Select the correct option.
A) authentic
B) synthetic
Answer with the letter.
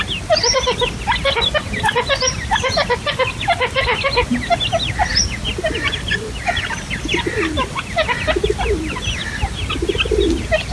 A